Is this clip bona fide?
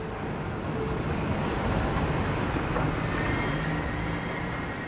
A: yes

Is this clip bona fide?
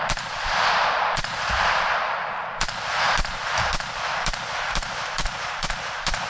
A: no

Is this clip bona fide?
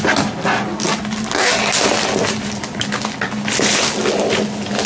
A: yes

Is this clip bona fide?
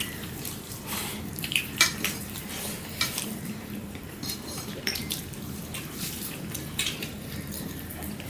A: no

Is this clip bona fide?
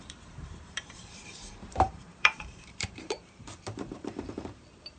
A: no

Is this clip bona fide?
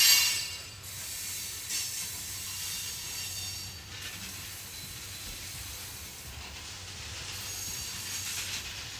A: yes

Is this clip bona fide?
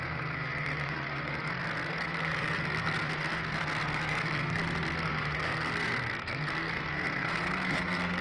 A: no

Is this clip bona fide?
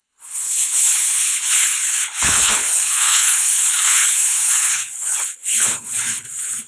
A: no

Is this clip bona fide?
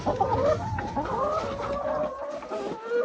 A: yes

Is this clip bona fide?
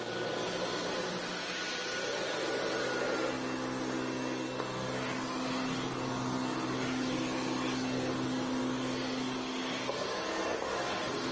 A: yes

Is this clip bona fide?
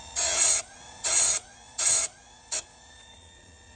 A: no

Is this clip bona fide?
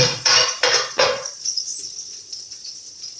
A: no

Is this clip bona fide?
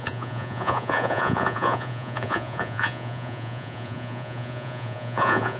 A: no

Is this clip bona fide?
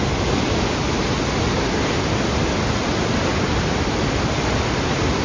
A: yes